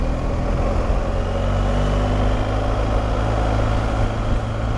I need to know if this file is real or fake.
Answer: real